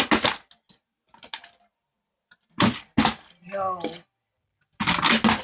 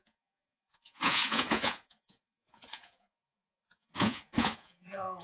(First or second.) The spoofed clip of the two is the second